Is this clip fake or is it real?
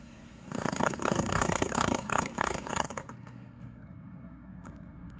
fake